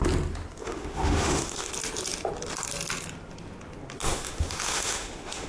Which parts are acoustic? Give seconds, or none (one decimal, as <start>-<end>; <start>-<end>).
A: 0.0-0.6; 1.7-4.0